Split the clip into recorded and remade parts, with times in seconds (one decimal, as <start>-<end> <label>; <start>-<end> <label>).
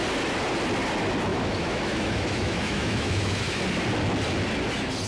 0.0-1.3 recorded; 1.3-3.6 remade; 3.6-5.1 recorded